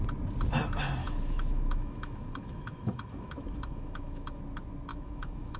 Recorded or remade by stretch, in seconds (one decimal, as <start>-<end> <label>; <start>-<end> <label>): 0.0-1.0 recorded; 1.0-4.4 remade; 4.4-4.9 recorded; 4.9-5.6 remade